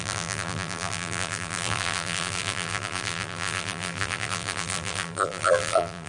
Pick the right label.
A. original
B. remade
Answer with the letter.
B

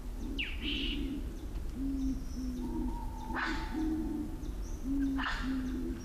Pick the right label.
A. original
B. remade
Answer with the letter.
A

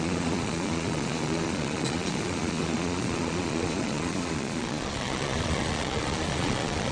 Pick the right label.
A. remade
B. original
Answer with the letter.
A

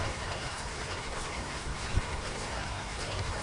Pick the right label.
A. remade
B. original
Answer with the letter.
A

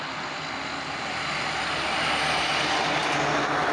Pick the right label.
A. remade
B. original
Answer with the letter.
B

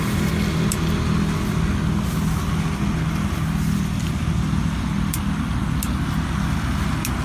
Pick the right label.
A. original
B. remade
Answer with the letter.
A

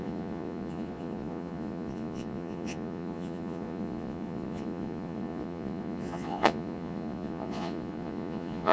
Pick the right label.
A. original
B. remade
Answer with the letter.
B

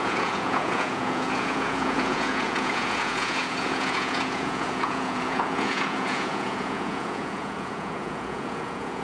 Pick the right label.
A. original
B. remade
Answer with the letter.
B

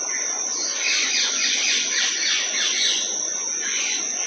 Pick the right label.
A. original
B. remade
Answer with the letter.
B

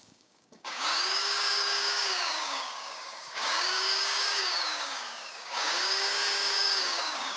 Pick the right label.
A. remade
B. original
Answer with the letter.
A